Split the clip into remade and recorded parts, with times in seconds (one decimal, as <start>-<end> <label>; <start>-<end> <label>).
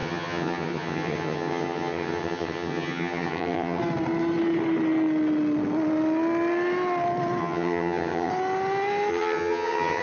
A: 0.0-3.8 remade; 3.8-7.4 recorded; 7.4-8.3 remade; 8.3-9.1 recorded; 9.1-10.0 remade